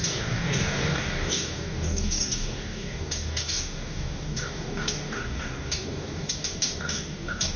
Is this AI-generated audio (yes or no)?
yes